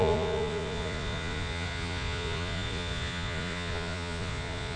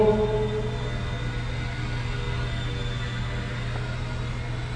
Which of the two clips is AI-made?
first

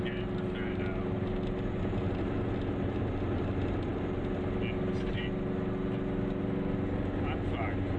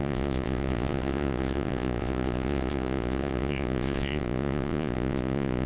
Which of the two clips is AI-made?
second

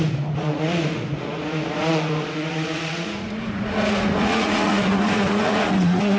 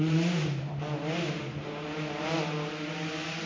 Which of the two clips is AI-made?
first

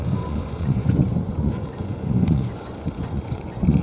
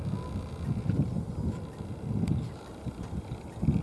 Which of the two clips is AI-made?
first